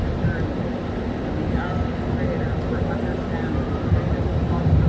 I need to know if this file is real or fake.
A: real